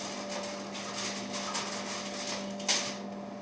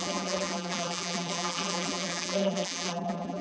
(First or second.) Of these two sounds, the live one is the first